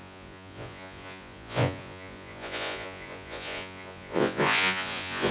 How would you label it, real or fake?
fake